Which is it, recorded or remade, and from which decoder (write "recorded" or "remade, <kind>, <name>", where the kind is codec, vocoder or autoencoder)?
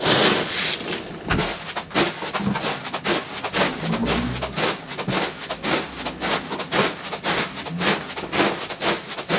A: recorded